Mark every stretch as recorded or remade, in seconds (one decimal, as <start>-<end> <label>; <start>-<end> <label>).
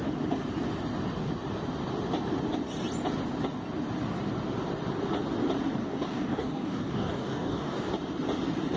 0.0-5.8 recorded; 5.8-7.9 remade; 7.9-8.8 recorded